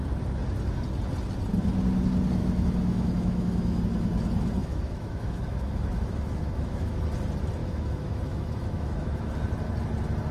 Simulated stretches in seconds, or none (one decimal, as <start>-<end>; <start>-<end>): 2.4-3.8; 4.6-7.0; 7.6-9.3